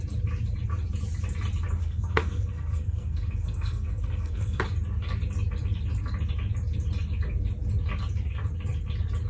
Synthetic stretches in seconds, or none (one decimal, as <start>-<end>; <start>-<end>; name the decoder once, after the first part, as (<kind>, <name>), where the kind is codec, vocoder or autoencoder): 1.8-4.6 (codec, SNAC)